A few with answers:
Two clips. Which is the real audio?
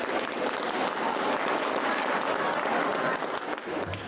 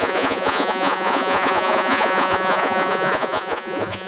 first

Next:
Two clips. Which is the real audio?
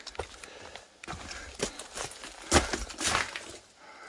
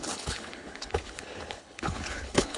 first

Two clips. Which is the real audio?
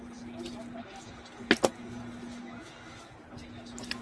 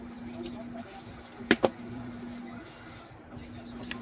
first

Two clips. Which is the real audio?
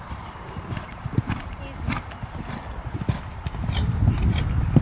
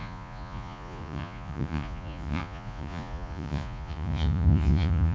first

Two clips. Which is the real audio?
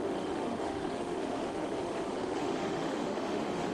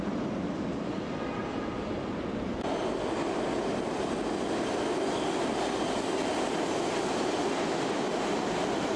second